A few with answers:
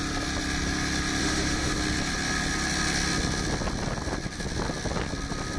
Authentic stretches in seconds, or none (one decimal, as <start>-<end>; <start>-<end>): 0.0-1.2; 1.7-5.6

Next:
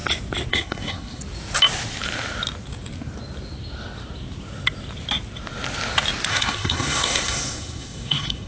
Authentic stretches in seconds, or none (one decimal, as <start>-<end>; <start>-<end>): 0.0-0.5; 1.2-6.3

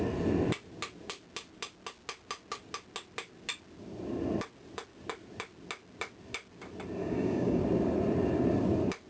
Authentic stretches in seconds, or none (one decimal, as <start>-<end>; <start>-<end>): 0.0-7.0; 7.6-9.1

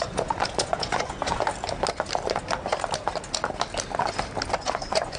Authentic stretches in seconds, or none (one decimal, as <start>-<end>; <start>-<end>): 1.5-4.6

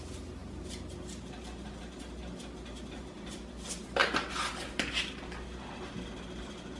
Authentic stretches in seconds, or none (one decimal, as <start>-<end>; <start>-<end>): 0.0-6.8